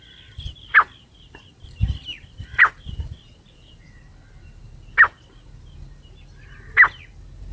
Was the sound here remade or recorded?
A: recorded